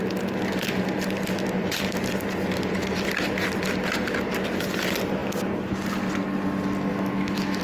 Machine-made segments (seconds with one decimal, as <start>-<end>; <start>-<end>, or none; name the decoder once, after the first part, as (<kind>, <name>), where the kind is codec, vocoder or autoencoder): 6.9-7.6 (autoencoder, DAC-VAE)